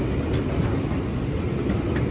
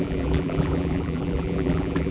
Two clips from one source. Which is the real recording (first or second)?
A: first